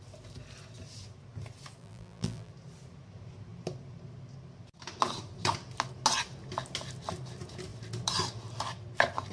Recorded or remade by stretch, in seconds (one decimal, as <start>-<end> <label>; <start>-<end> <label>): 0.0-1.8 recorded; 1.8-2.5 remade; 2.5-9.3 recorded